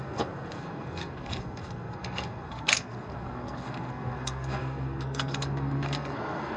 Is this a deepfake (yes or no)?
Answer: yes